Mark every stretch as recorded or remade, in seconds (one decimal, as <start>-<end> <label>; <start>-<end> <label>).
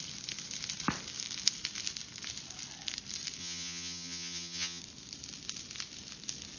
0.0-3.4 recorded; 3.4-4.8 remade; 4.8-6.6 recorded